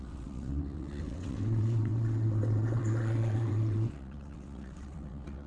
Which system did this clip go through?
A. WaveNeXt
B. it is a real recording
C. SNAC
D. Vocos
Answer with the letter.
A